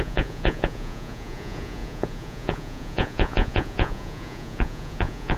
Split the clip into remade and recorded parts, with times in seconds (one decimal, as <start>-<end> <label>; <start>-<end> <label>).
0.0-5.4 remade